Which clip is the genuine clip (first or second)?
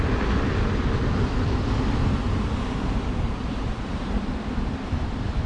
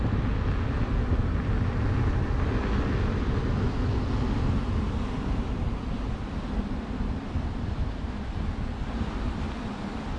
second